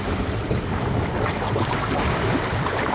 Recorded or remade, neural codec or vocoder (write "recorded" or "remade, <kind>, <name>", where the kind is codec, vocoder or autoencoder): recorded